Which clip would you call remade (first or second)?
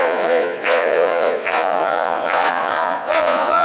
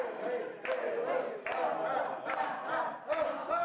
first